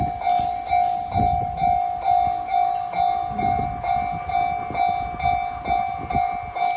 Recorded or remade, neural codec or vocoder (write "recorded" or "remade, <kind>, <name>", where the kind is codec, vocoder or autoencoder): recorded